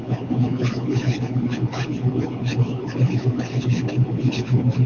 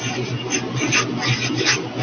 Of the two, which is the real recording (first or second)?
second